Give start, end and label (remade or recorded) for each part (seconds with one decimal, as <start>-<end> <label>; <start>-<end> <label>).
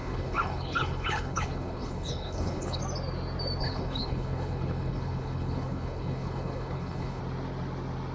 0.0-2.8 remade; 2.8-3.6 recorded; 3.6-7.2 remade; 7.2-8.1 recorded